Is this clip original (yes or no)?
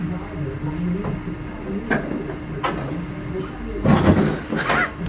yes